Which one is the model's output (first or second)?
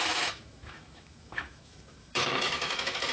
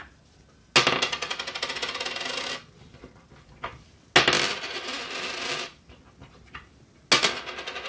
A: first